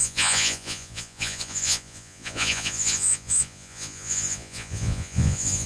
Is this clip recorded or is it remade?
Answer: remade